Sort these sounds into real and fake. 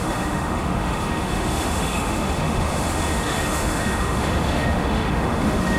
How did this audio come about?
fake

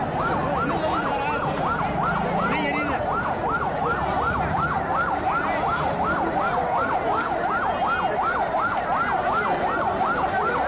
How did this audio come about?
real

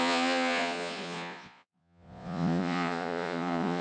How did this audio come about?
fake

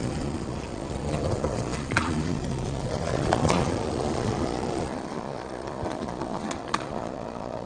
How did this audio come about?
fake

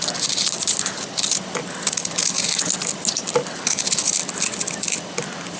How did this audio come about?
real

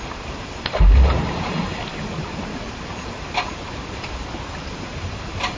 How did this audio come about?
fake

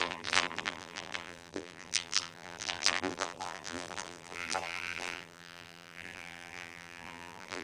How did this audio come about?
fake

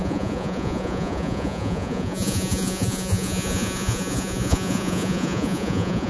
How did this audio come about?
fake